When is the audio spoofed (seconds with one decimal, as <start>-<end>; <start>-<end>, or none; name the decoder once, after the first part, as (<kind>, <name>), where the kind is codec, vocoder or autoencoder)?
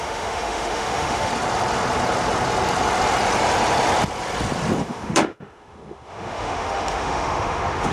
0.0-1.3 (autoencoder, DAC-VAE); 4.8-7.9